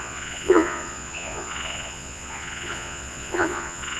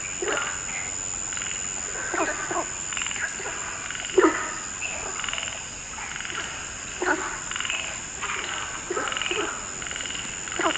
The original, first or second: second